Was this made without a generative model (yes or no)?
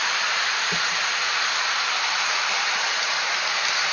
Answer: no